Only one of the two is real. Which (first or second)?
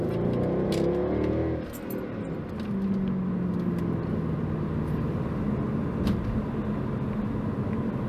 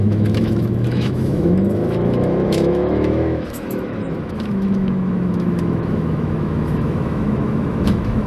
first